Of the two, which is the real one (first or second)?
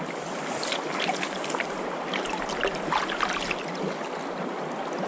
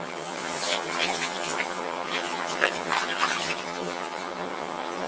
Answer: first